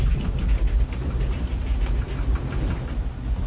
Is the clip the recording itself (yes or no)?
yes